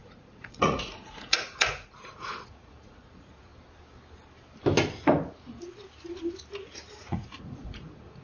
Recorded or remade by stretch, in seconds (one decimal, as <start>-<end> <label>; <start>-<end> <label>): 0.0-3.5 remade; 3.5-7.0 recorded; 7.0-8.2 remade

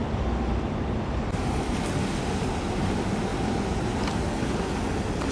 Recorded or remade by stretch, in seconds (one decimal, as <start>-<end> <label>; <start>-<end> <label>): 0.0-3.3 recorded; 3.3-4.2 remade; 4.2-5.3 recorded